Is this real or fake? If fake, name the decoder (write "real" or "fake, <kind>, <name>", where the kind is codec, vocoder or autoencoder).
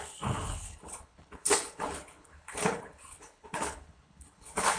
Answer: fake, codec, HILCodec